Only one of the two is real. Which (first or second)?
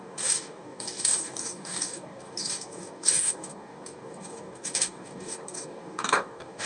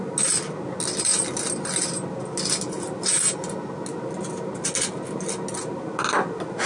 second